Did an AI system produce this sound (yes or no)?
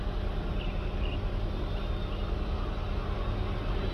no